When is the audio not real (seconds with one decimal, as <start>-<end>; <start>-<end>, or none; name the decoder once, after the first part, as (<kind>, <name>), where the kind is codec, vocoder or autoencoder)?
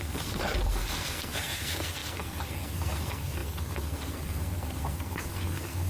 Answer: 0.0-5.9 (codec, SNAC)